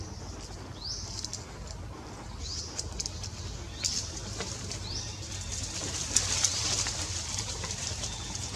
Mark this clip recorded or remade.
recorded